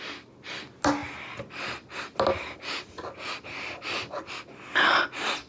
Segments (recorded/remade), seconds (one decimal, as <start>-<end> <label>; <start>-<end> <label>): 0.0-5.5 recorded